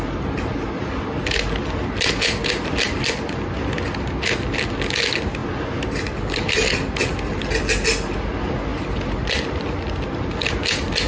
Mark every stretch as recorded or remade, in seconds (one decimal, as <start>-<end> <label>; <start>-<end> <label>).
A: 0.0-11.1 recorded